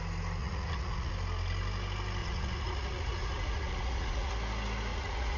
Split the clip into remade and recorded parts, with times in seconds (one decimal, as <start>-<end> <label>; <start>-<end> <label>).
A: 0.0-0.4 recorded; 0.4-1.1 remade; 1.1-2.2 recorded; 2.2-4.3 remade; 4.3-4.9 recorded; 4.9-5.4 remade